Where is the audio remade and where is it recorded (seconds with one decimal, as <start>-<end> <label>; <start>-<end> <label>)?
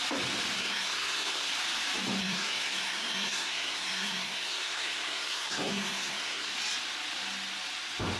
0.0-0.6 recorded; 0.6-1.5 remade; 1.5-2.2 recorded; 2.2-6.5 remade; 6.5-8.2 recorded